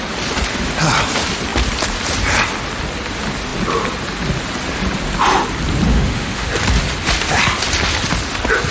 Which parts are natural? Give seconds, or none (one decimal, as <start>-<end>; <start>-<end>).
0.0-5.9; 6.5-8.7